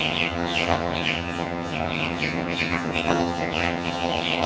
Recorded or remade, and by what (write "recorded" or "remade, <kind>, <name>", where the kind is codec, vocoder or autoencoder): remade, vocoder, HiFi-GAN